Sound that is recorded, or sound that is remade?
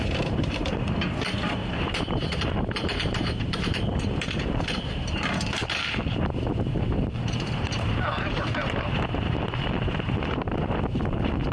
remade